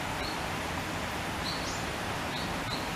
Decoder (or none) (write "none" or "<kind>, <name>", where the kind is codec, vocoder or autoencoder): none